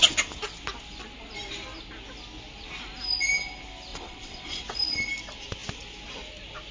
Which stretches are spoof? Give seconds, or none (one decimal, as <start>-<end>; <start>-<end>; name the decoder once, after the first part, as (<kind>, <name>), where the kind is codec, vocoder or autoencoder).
3.9-4.6 (vocoder, WaveNeXt)